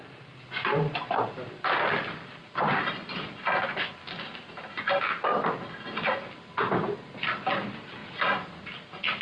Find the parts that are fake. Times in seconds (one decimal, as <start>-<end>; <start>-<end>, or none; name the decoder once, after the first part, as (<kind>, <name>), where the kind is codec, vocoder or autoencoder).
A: none